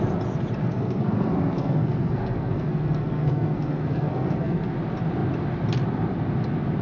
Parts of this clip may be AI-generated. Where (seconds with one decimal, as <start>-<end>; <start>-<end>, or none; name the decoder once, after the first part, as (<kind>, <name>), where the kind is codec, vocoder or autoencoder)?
0.6-4.7 (codec, SNAC)